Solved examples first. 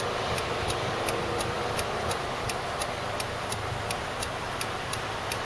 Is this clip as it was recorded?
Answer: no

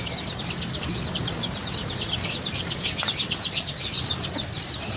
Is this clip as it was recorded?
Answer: no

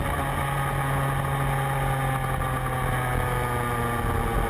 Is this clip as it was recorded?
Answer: yes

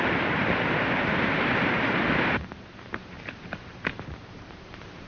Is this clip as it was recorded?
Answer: no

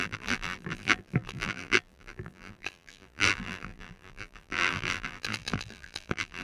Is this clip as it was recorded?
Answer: no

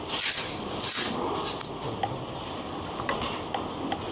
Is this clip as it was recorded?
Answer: yes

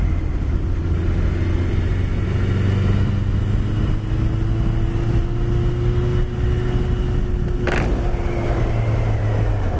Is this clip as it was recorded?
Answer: yes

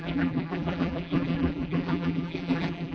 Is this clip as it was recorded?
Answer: no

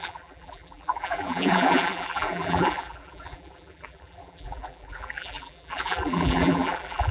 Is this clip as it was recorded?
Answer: no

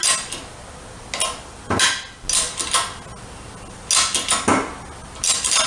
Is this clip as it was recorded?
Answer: yes